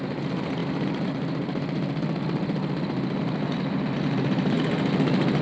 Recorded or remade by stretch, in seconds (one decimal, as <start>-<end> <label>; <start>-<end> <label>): 0.0-5.4 recorded

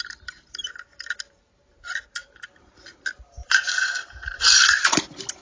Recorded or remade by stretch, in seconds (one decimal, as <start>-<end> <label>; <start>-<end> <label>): 0.0-3.4 recorded; 3.4-5.0 remade; 5.0-5.4 recorded